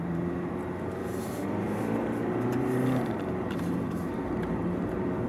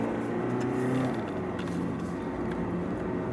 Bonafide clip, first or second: second